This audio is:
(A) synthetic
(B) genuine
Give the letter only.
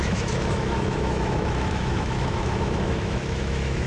A